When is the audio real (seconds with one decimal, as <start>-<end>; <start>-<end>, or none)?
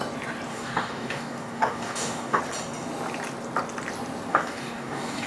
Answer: 0.0-0.5; 2.4-4.3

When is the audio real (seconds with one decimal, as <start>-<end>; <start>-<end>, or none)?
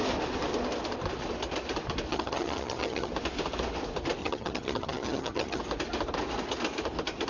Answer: 0.0-2.1; 3.1-4.2; 5.6-7.3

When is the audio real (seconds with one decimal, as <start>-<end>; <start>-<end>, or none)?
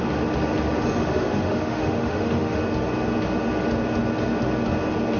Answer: 0.0-1.0; 2.6-5.2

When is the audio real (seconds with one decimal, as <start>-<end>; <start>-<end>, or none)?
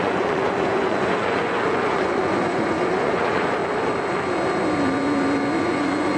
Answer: 3.6-5.6